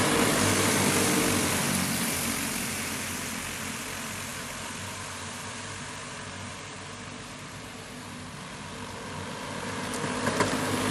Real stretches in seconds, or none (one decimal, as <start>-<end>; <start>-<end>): 0.0-10.9